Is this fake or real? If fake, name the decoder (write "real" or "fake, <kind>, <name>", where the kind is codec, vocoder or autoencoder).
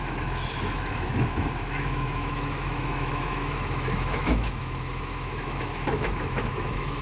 fake, autoencoder, DAC-VAE